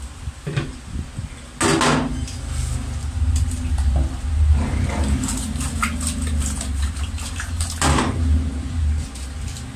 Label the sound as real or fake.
real